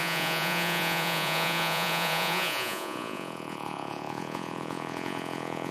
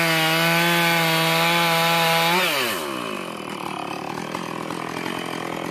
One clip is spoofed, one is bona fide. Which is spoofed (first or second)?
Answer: first